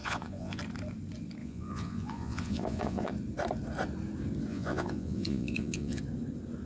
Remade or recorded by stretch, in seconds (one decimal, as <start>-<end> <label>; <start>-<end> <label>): 0.0-0.6 remade; 0.6-1.4 recorded; 1.4-3.1 remade; 3.1-4.5 recorded; 4.5-6.0 remade; 6.0-6.7 recorded